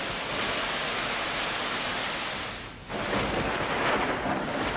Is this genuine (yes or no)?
yes